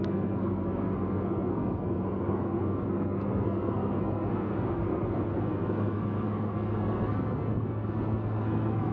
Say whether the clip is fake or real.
fake